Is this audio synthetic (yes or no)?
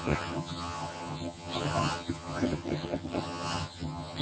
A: yes